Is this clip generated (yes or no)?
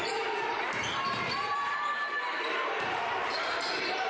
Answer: yes